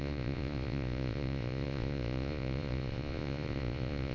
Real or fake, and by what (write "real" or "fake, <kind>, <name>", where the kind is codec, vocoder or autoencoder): fake, vocoder, Vocos